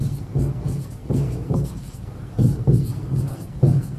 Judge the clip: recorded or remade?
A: remade